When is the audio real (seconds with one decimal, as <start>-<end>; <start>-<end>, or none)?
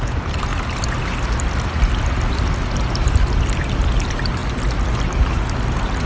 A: 0.0-6.1